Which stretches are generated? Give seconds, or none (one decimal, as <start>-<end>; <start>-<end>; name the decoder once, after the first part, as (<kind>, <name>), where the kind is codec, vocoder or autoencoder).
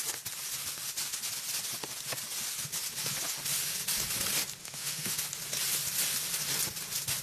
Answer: 4.6-5.2 (autoencoder, DAC-VAE)